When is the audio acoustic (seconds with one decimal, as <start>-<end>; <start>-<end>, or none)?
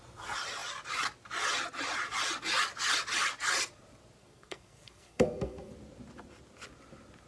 0.0-4.2; 5.7-7.3